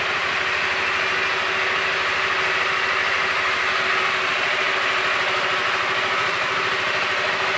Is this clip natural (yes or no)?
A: yes